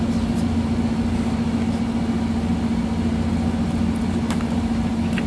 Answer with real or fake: real